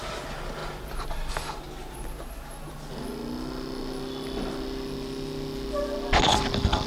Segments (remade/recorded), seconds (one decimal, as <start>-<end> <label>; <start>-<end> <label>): 0.0-6.9 recorded